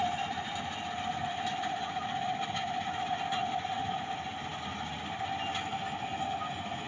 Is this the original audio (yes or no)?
yes